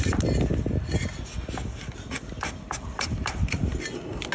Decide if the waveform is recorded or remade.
recorded